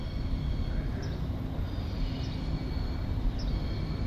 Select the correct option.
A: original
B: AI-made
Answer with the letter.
A